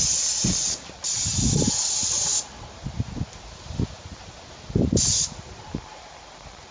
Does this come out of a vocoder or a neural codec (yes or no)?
no